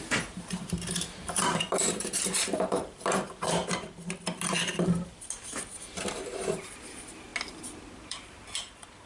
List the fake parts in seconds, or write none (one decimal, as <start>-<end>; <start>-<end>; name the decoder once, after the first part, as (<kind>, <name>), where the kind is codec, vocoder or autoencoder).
0.0-3.6 (vocoder, BigVGAN v2); 5.3-7.3; 7.9-9.1